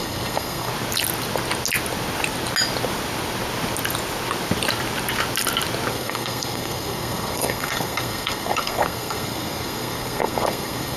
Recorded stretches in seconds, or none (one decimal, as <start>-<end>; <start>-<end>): 0.7-5.9

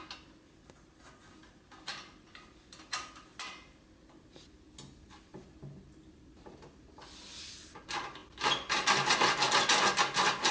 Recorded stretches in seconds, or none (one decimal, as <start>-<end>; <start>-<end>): 0.0-10.5